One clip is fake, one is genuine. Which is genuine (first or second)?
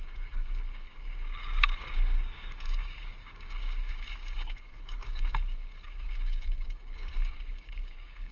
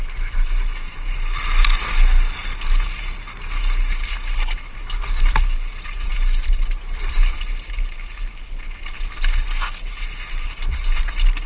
second